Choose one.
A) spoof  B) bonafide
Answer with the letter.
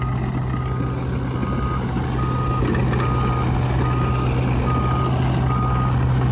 B